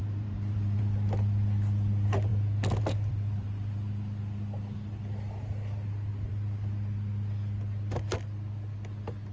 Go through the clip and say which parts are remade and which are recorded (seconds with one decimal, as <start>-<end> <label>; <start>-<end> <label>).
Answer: 0.0-0.8 remade; 0.8-9.3 recorded